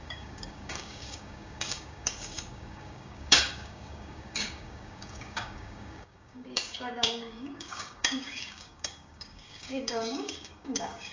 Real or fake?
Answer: fake